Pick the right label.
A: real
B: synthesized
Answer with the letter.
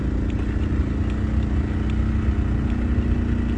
A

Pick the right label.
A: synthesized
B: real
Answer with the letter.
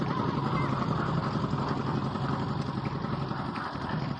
B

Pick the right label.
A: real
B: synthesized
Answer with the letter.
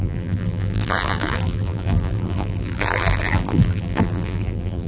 B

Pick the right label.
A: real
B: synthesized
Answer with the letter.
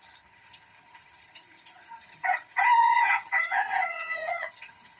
B